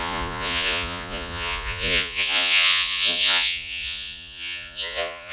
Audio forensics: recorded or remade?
remade